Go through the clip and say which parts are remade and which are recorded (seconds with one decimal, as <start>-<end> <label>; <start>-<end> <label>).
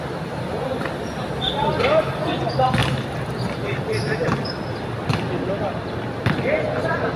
0.0-7.2 recorded